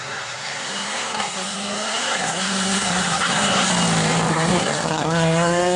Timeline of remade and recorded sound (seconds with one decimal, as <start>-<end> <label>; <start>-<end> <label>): 0.0-3.7 remade; 3.7-4.3 recorded; 4.3-5.8 remade